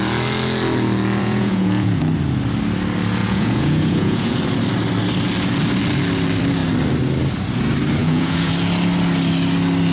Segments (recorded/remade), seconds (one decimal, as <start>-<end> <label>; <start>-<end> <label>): 0.0-1.2 recorded; 1.2-2.0 remade; 2.0-3.2 recorded; 3.2-4.4 remade; 4.4-8.0 recorded; 8.0-8.5 remade; 8.5-9.9 recorded